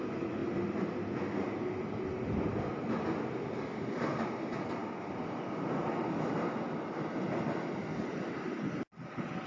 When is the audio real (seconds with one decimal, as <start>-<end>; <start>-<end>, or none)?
0.0-9.5